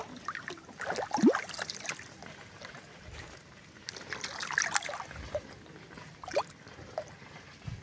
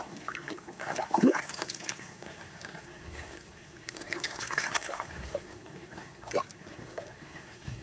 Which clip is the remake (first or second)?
second